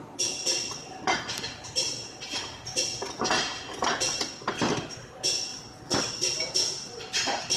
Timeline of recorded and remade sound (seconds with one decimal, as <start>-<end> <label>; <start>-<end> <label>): 0.0-7.6 recorded